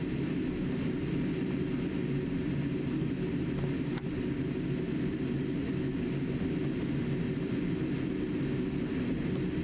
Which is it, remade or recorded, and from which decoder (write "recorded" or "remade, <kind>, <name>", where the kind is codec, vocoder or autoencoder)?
recorded